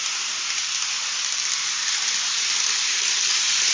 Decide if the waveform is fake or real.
real